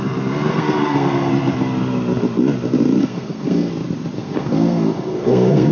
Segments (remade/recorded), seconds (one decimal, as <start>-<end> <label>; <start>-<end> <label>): 0.0-0.5 recorded; 0.5-1.3 remade; 1.3-3.0 recorded; 3.0-3.7 remade; 3.7-4.2 recorded; 4.2-5.7 remade